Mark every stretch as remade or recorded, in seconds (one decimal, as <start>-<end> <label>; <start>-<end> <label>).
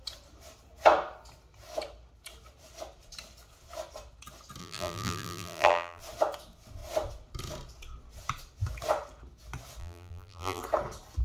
0.0-4.6 recorded; 4.6-6.0 remade; 6.0-9.8 recorded; 9.8-10.6 remade; 10.6-11.2 recorded